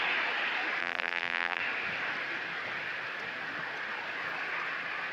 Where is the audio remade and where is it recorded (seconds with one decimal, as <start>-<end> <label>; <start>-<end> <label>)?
0.0-0.8 recorded; 0.8-1.6 remade; 1.6-5.1 recorded